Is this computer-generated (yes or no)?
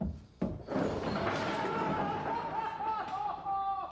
no